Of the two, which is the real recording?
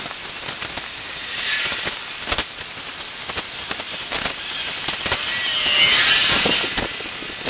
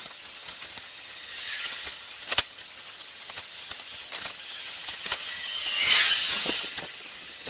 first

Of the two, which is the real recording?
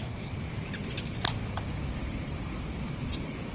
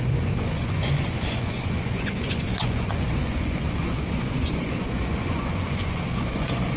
first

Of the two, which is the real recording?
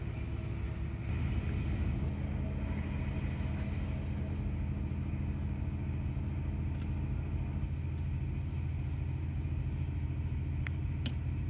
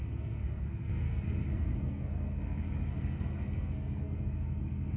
first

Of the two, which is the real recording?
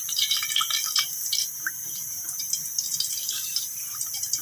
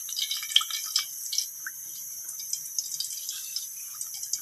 second